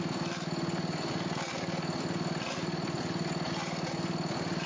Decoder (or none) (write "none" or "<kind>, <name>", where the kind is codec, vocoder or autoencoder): none